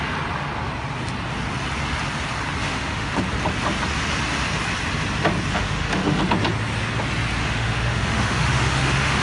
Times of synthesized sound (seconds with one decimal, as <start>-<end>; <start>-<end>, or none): 2.6-3.2; 5.5-6.2; 7.4-9.2